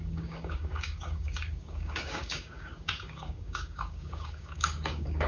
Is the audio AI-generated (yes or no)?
yes